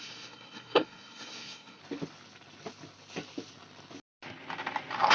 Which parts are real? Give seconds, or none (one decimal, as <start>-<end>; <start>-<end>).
1.8-5.1

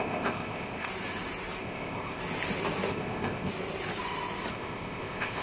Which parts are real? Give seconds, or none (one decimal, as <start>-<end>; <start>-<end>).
0.9-1.6; 2.2-2.9; 3.5-4.5